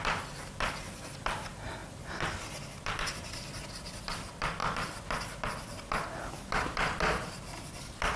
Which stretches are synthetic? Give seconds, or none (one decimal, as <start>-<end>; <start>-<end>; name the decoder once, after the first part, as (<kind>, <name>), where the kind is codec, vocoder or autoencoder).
none